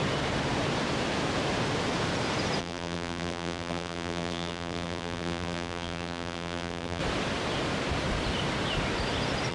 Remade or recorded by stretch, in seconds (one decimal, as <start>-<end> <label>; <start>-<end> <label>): 0.0-2.6 recorded; 2.6-7.0 remade; 7.0-9.5 recorded